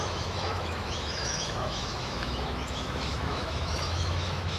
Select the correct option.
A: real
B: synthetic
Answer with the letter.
B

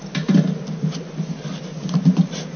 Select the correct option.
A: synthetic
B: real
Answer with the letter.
B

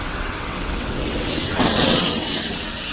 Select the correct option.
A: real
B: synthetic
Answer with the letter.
B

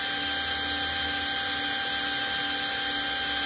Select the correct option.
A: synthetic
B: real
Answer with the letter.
B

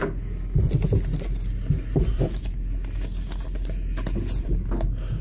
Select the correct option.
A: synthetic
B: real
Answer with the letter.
B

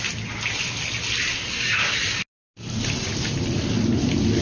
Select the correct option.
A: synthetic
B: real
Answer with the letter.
B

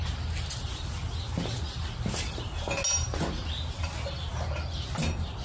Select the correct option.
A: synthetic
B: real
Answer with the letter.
B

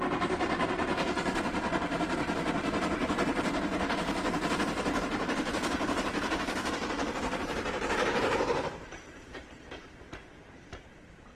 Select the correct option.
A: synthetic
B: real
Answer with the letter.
A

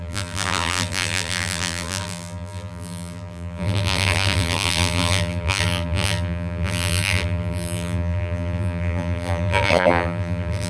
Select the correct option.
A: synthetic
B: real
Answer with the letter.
A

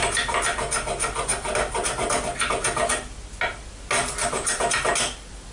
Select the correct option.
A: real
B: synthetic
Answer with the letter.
A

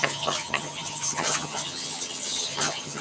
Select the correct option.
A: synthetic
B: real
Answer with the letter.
A